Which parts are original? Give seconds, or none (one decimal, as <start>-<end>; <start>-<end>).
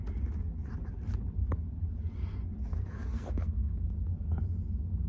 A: 0.0-2.7; 3.8-5.1